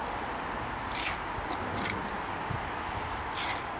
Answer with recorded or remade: recorded